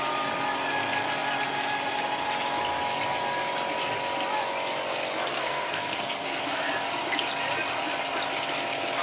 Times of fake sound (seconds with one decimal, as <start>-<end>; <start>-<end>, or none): 5.3-6.4